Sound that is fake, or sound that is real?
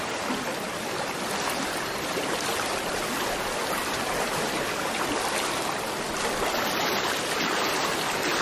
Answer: real